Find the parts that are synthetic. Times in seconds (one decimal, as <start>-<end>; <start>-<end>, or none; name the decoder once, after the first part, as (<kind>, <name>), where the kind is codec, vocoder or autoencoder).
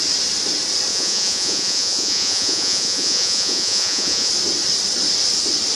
0.9-4.3 (vocoder, Vocos)